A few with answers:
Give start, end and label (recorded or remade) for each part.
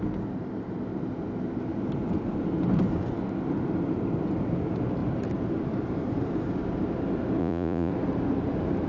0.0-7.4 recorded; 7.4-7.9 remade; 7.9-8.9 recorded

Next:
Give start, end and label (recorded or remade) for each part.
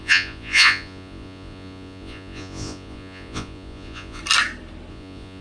0.0-4.2 remade; 4.2-4.9 recorded; 4.9-5.4 remade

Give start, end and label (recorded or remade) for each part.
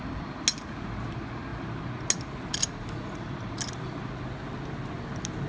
0.0-5.5 recorded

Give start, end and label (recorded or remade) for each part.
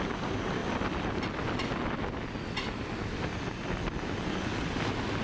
0.0-5.2 recorded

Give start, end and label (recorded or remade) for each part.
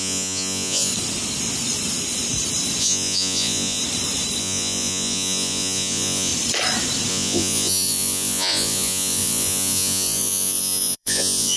0.0-0.9 remade; 0.9-2.8 recorded; 2.8-3.8 remade; 3.8-4.4 recorded; 4.4-6.3 remade; 6.3-7.1 recorded; 7.1-11.6 remade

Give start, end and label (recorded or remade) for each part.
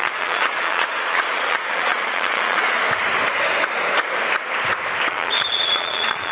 0.0-2.8 remade; 2.8-5.1 recorded; 5.1-6.3 remade